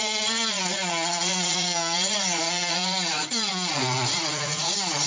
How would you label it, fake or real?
fake